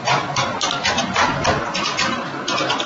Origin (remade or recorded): remade